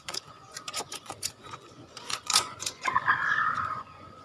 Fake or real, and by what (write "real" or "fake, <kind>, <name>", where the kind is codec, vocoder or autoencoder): fake, vocoder, Vocos